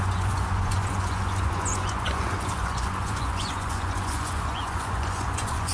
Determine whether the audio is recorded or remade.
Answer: remade